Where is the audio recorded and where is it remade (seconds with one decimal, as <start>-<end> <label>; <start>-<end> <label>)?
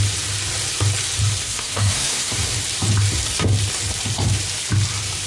0.0-1.4 recorded; 1.4-2.3 remade; 2.3-5.3 recorded